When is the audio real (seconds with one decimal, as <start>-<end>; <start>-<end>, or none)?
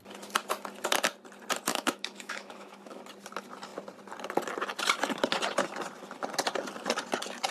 0.0-1.7; 3.0-7.5